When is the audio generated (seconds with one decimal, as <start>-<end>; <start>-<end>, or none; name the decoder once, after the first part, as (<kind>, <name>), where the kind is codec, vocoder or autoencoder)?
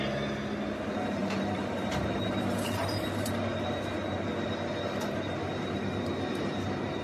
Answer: 1.2-3.3 (vocoder, BigVGAN v2)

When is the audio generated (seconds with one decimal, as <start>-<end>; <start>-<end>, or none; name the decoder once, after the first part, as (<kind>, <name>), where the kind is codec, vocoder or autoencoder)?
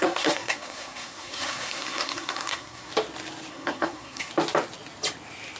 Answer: 0.0-2.9 (codec, SNAC); 3.5-4.3